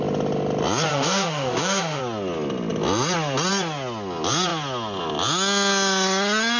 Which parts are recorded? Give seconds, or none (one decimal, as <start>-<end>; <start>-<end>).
0.0-0.9; 2.0-6.6